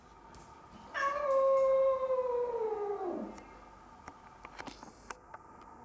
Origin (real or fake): real